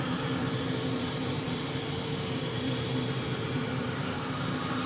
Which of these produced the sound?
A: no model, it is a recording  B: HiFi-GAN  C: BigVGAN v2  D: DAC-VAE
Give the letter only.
C